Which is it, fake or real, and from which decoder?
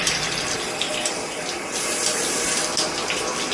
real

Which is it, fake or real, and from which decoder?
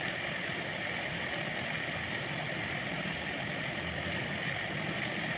real